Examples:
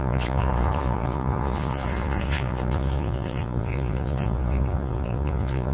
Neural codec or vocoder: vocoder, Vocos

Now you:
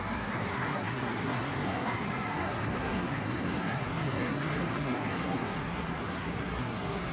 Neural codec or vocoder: codec, SNAC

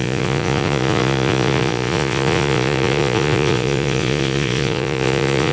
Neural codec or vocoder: vocoder, Vocos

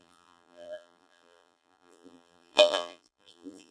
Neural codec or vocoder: vocoder, BigVGAN v2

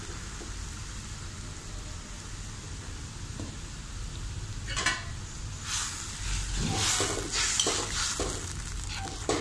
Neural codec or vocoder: none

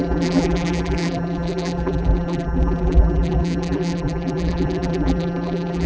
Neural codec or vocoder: vocoder, BigVGAN v2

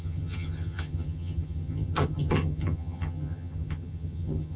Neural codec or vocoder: vocoder, HiFi-GAN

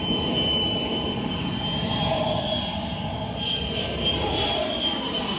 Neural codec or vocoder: none